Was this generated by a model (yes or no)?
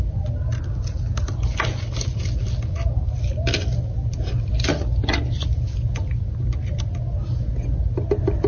no